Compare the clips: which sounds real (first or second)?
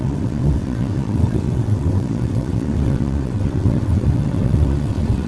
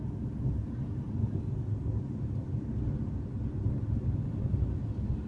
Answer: second